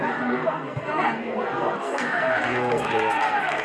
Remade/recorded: remade